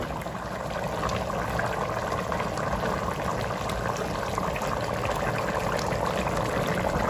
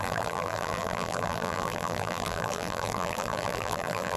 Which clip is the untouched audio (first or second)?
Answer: first